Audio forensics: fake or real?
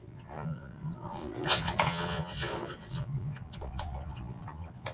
fake